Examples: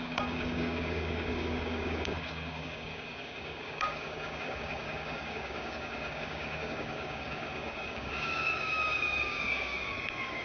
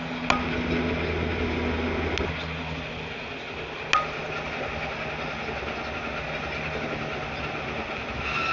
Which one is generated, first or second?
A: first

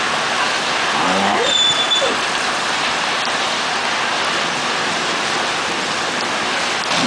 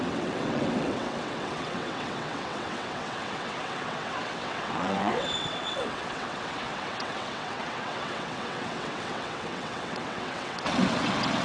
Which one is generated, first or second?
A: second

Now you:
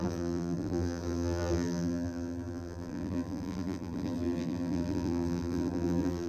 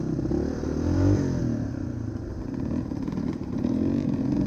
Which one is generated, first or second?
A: first